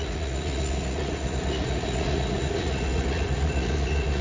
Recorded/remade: remade